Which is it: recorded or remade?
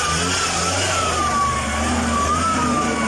recorded